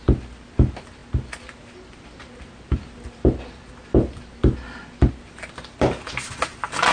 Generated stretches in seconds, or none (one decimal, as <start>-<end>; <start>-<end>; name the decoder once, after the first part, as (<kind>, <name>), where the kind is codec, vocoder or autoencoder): none